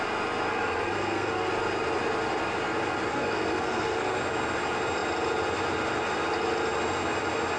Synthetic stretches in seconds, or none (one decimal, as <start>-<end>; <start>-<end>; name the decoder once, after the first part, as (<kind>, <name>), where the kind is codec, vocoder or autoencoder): 0.5-1.5 (codec, SNAC); 3.1-4.2